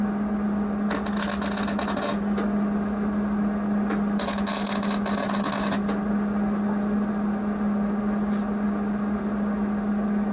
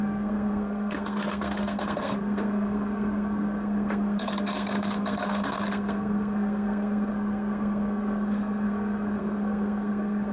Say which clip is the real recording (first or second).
first